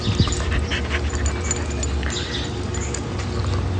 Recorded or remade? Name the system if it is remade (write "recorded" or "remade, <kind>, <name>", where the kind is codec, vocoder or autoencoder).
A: recorded